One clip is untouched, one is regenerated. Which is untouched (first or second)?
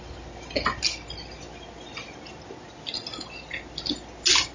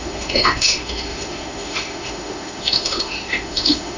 first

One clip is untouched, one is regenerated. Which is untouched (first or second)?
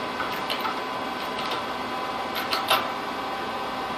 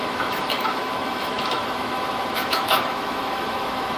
first